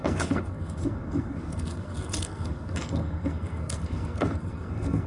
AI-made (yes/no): yes